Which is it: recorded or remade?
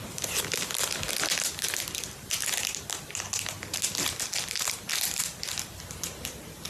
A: recorded